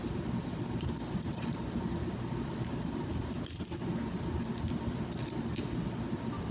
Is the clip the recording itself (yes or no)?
yes